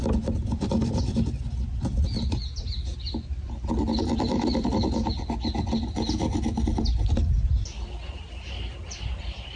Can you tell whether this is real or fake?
real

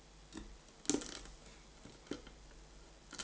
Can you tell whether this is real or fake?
real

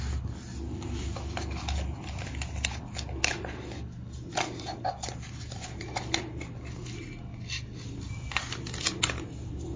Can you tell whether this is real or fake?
real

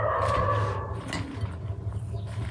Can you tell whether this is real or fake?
real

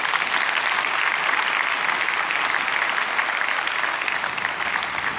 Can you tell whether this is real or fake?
real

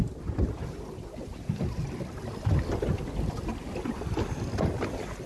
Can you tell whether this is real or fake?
real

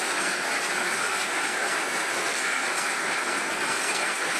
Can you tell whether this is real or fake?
fake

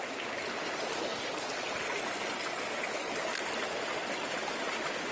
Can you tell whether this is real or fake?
real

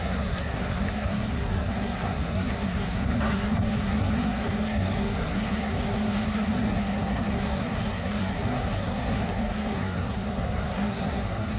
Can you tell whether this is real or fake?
fake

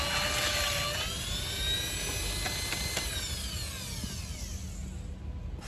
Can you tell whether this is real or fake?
real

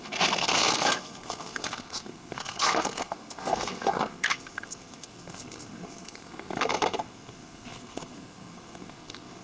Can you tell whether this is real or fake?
fake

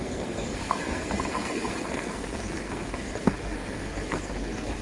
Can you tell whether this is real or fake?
fake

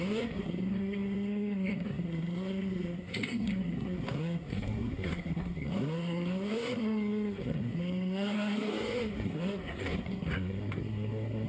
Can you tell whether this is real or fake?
fake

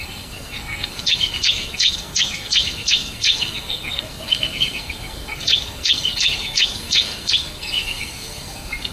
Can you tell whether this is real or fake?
fake